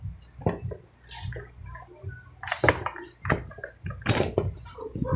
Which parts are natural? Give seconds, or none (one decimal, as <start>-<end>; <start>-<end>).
0.0-5.2